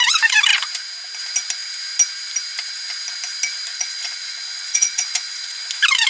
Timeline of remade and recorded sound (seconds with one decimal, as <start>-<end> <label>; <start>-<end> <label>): 0.0-3.7 recorded; 3.7-5.6 remade; 5.6-6.1 recorded